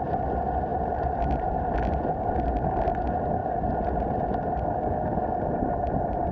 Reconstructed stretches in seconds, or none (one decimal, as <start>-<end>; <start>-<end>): 0.7-1.9; 3.4-5.5